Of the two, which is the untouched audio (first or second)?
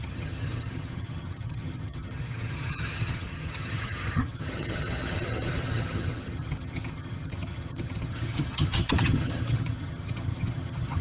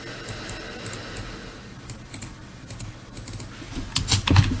second